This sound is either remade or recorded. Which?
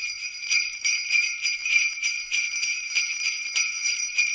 remade